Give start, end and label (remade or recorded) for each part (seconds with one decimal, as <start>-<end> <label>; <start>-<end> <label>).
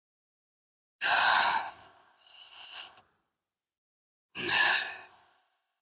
0.0-1.6 recorded; 1.6-3.0 remade; 3.0-4.7 recorded; 4.7-5.8 remade